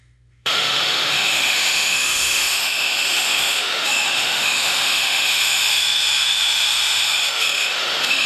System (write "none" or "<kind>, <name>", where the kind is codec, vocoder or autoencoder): autoencoder, DAC-VAE